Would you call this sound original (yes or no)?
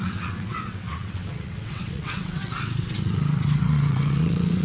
no